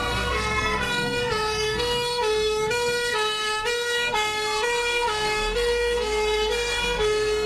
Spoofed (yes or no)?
yes